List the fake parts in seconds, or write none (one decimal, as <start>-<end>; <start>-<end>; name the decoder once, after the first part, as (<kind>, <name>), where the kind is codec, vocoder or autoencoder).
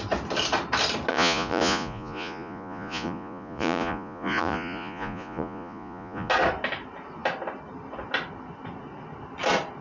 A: 1.1-6.3 (vocoder, Vocos)